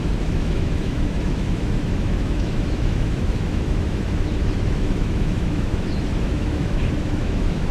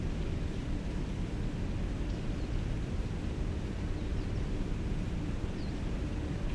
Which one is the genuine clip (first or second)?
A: second